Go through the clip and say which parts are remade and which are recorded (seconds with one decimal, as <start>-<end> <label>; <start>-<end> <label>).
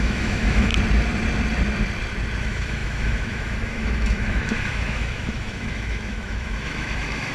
0.0-0.7 remade; 0.7-2.4 recorded; 2.4-7.3 remade